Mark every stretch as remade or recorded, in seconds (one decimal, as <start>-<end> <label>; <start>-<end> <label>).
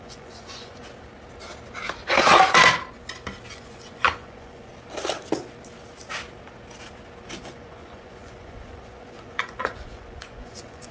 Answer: 0.0-0.8 remade; 0.8-3.5 recorded; 3.5-4.7 remade; 4.7-7.4 recorded; 7.4-10.9 remade